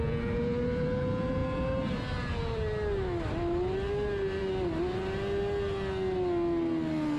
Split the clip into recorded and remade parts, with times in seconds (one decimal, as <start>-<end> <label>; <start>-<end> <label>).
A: 0.0-7.2 recorded